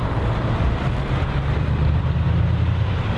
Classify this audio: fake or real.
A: fake